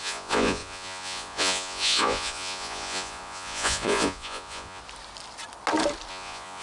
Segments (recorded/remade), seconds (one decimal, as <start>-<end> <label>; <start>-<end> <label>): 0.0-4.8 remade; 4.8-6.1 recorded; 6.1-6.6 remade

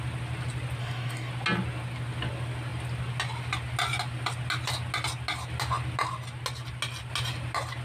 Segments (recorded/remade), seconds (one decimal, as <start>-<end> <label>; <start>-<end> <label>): 0.0-0.8 recorded; 0.8-1.3 remade; 1.3-7.8 recorded

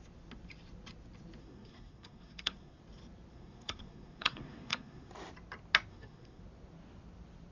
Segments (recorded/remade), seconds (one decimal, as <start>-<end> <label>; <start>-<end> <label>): 0.0-1.4 recorded; 1.4-2.8 remade; 2.8-3.3 recorded; 3.3-5.1 remade; 5.1-5.9 recorded; 5.9-6.4 remade; 6.4-7.5 recorded

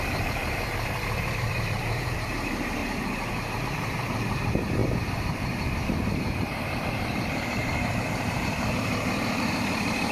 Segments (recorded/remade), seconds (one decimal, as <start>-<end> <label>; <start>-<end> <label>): 0.0-2.8 remade; 2.8-3.6 recorded; 3.6-10.1 remade

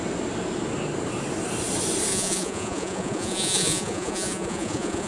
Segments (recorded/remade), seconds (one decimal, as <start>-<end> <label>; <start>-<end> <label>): 0.0-2.1 recorded; 2.1-5.1 remade